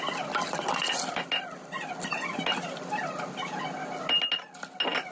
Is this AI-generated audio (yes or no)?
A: no